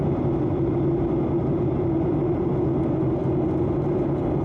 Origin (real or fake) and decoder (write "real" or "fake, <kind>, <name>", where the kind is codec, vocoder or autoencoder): real